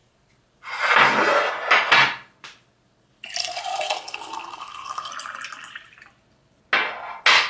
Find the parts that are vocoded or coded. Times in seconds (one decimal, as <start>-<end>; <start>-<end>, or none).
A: 3.4-5.1